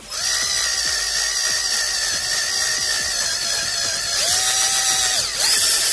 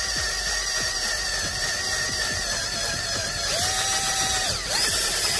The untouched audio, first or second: first